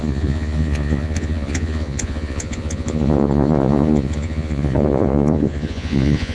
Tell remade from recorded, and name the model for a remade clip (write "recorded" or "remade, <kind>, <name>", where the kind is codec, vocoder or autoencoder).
remade, vocoder, Vocos